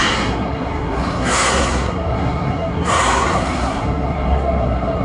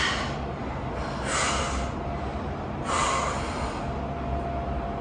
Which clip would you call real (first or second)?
second